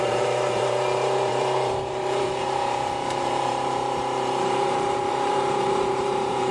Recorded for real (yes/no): no